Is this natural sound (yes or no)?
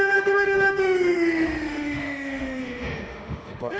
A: no